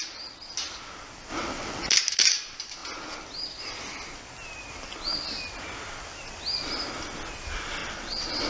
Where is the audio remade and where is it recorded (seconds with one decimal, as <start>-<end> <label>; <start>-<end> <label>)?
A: 0.0-1.3 recorded; 1.3-1.9 remade; 1.9-7.8 recorded; 7.8-8.5 remade